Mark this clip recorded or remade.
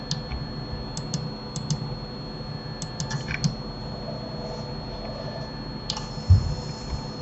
recorded